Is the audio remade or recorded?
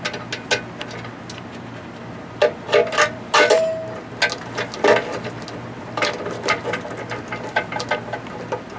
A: recorded